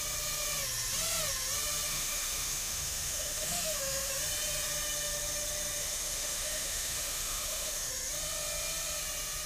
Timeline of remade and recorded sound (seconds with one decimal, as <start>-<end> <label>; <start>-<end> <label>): 0.0-1.9 recorded; 1.9-4.1 remade; 4.1-5.8 recorded; 5.8-7.9 remade; 7.9-9.5 recorded

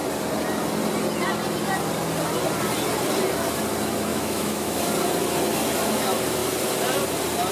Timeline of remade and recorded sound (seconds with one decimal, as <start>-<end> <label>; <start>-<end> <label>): 0.0-4.1 recorded; 4.1-4.8 remade; 4.8-7.5 recorded